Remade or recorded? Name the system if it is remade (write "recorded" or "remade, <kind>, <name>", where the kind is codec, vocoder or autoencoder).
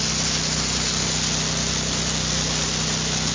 recorded